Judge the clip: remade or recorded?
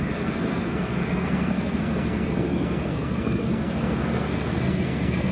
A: remade